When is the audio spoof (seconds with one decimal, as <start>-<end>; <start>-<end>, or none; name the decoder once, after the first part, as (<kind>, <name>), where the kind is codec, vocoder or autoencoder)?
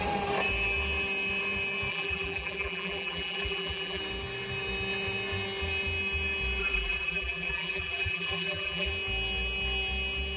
1.9-4.0 (vocoder, BigVGAN v2); 6.6-8.9